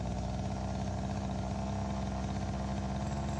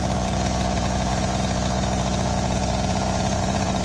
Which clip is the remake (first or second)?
second